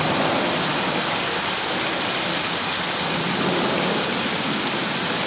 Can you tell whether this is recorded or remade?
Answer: recorded